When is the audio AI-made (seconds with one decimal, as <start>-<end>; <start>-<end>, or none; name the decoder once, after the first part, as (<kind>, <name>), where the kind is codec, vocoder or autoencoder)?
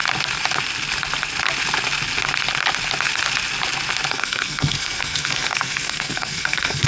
4.1-6.9 (codec, SNAC)